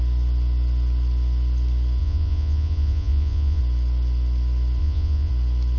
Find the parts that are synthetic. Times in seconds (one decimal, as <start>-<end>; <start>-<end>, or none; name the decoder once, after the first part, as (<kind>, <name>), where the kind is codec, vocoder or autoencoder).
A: 2.0-3.6 (vocoder, Vocos); 4.8-5.3